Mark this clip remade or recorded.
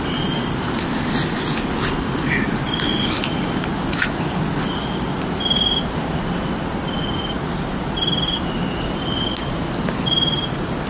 recorded